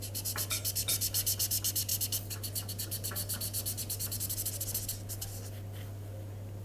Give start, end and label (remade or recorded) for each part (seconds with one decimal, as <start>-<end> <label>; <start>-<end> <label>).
0.0-6.6 recorded